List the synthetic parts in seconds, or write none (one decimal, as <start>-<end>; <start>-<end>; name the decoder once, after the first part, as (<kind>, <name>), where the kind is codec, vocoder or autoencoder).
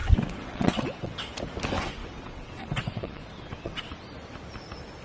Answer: 0.0-1.3 (vocoder, WaveNeXt); 2.0-3.9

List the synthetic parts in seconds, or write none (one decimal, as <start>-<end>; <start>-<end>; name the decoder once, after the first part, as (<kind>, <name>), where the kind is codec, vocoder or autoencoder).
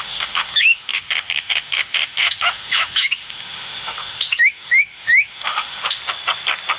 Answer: 0.0-6.0 (autoencoder, DAC-VAE)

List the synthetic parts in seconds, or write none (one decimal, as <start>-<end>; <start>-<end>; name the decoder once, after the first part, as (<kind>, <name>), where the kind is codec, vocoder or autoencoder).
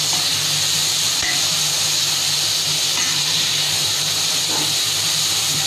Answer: 0.8-1.6 (vocoder, BigVGAN v2); 3.0-5.7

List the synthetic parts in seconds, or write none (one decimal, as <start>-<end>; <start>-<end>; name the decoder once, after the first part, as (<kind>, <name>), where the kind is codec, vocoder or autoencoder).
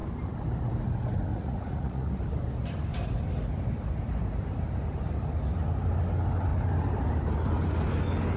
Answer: 1.3-2.1 (vocoder, Vocos)